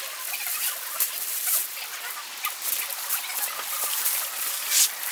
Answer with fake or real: real